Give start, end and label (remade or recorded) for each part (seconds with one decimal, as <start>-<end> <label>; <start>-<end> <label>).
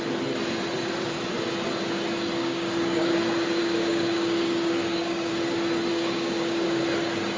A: 0.0-2.4 recorded; 2.4-3.2 remade; 3.2-3.6 recorded; 3.6-5.3 remade; 5.3-5.9 recorded; 5.9-6.8 remade; 6.8-7.4 recorded